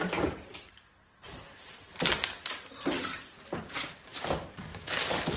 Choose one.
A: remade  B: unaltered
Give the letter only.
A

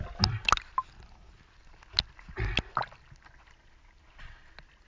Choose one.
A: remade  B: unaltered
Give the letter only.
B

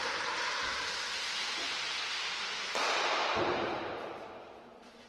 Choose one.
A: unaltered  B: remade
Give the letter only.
B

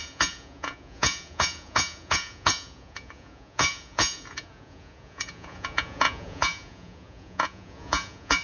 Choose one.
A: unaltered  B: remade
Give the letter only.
B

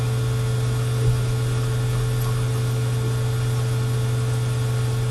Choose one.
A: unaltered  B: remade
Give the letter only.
A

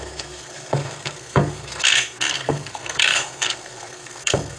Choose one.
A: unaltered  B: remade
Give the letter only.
B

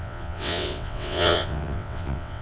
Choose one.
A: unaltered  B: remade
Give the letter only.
B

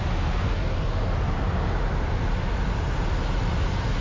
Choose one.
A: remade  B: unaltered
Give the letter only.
B